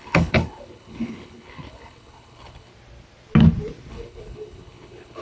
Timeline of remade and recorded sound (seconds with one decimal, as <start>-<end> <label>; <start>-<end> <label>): 0.0-2.7 remade; 2.7-3.9 recorded; 3.9-5.2 remade